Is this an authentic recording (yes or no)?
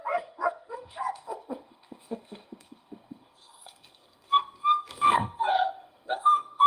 no